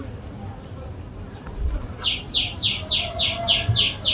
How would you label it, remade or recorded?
recorded